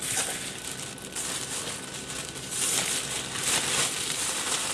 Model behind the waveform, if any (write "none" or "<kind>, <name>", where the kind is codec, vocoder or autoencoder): none